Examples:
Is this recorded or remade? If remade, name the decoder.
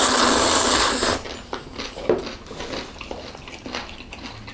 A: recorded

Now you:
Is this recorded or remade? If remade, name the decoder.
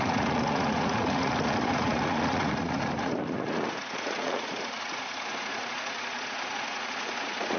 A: remade, vocoder, Vocos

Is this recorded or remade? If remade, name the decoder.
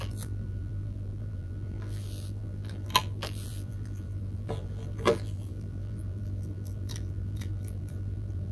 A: remade, vocoder, BigVGAN v2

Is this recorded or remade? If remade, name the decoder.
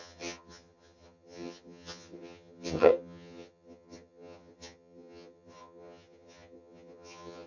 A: remade, vocoder, HiFi-GAN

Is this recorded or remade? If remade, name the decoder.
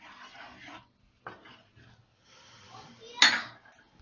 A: recorded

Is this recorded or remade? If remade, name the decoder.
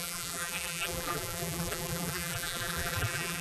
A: remade, vocoder, BigVGAN v2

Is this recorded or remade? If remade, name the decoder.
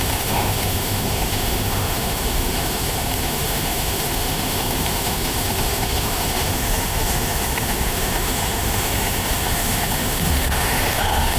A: remade, autoencoder, DAC-VAE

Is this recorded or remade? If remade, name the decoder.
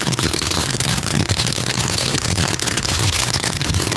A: remade, codec, SNAC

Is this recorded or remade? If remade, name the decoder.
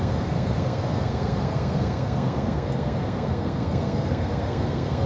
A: remade, codec, SNAC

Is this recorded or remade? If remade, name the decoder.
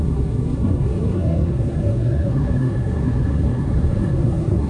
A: remade, codec, SNAC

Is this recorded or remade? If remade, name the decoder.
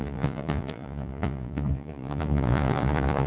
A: remade, vocoder, Vocos